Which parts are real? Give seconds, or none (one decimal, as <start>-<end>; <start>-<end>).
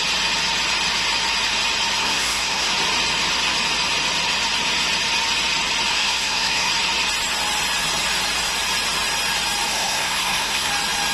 0.0-2.0; 2.7-5.9; 6.7-9.7; 10.7-11.1